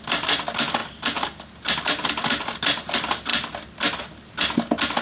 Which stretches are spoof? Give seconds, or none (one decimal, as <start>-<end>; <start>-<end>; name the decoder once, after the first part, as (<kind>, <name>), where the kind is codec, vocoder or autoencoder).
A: none